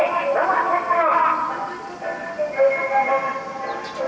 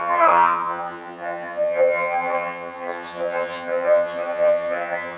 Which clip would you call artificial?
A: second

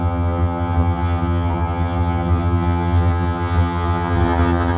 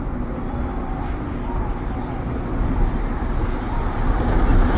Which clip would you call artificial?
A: first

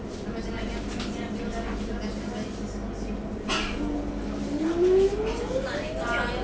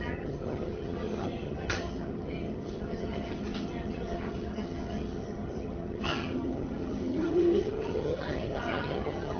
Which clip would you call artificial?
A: second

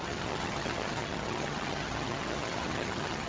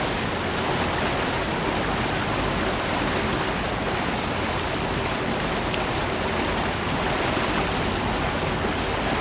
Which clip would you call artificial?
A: first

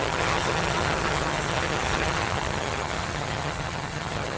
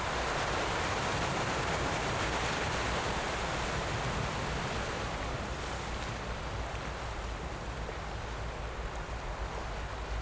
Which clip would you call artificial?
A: first